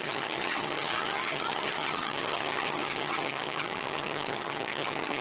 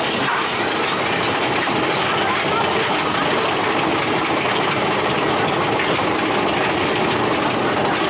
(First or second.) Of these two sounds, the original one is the second